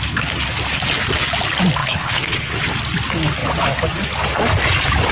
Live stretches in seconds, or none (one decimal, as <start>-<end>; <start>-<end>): 0.0-1.8; 2.5-5.1